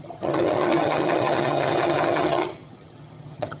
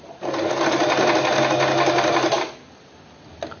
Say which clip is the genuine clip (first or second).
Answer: second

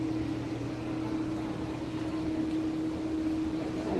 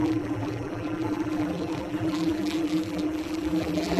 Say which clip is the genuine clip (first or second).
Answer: first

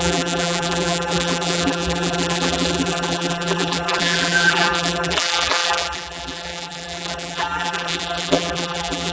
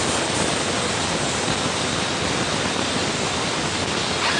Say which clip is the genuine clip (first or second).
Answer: second